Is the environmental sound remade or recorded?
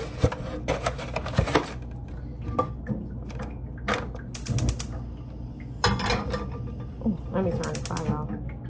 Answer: recorded